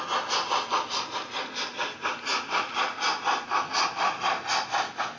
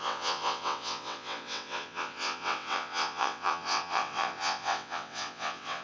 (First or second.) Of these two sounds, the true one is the first